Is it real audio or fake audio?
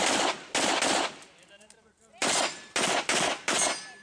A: real